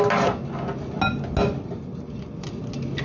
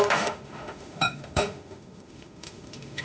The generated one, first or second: second